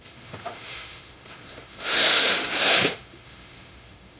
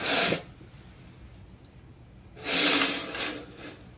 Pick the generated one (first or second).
first